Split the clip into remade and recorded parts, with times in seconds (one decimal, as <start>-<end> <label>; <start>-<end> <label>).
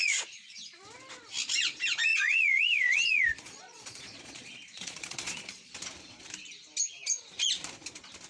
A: 0.0-0.8 remade; 0.8-2.1 recorded; 2.1-5.7 remade; 5.7-8.3 recorded